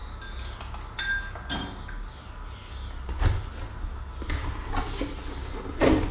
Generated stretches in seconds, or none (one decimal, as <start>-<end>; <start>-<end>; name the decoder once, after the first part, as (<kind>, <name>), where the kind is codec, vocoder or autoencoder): none